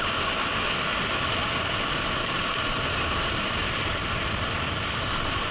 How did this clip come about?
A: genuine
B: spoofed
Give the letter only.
A